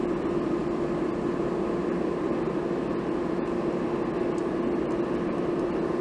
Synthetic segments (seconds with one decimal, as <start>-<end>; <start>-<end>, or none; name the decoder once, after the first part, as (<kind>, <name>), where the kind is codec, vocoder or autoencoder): none